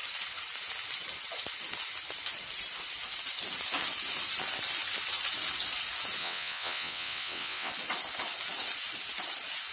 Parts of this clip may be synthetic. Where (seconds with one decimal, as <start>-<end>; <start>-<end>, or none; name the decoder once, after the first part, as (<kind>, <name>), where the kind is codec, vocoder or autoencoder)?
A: 6.2-7.7 (vocoder, WaveNeXt)